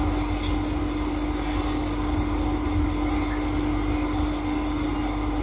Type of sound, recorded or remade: recorded